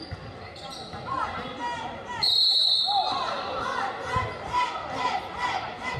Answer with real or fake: real